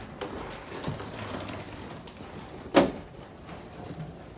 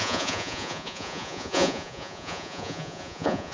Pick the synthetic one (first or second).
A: second